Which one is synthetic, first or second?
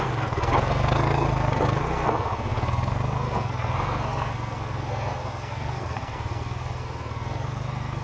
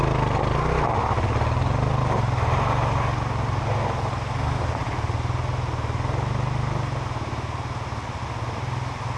first